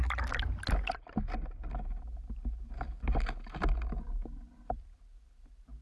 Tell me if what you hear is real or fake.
real